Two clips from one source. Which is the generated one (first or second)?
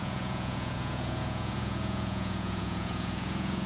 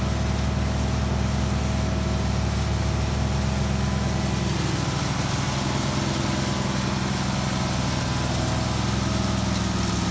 first